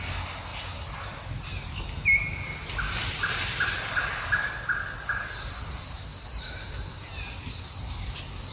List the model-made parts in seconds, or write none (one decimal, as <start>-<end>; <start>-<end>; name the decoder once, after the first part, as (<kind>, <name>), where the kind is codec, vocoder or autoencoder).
none